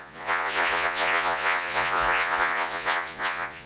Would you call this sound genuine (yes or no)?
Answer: no